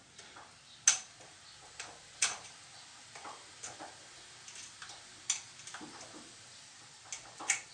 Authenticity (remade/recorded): recorded